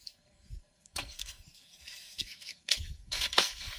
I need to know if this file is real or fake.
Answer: fake